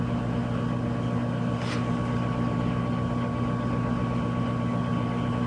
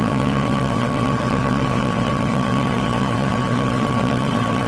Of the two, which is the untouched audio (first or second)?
first